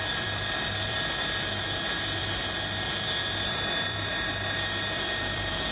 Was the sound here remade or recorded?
remade